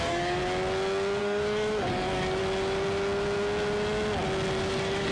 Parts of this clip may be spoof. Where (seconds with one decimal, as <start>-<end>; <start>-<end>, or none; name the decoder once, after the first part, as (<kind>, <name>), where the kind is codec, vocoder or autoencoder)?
0.0-0.4 (codec, DAC); 1.2-2.4; 4.6-5.1